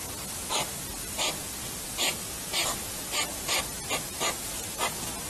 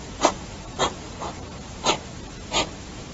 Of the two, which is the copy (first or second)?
second